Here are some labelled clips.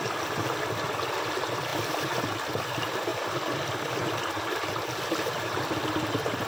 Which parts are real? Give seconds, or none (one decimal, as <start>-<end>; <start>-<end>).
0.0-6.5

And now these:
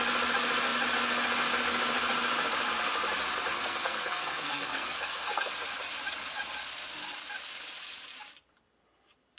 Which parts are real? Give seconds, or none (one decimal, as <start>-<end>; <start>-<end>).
0.0-3.5; 5.5-9.4

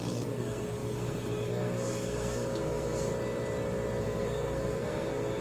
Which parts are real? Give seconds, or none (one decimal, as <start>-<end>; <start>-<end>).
3.1-4.0

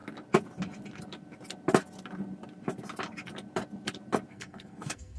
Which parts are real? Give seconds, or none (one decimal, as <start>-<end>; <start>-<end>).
0.0-4.3

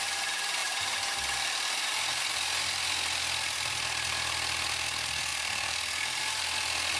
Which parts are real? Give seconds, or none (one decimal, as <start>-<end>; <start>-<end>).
0.0-5.3; 6.2-7.0

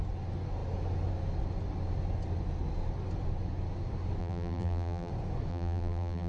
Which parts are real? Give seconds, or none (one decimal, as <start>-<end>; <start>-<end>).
0.0-4.2; 5.1-5.5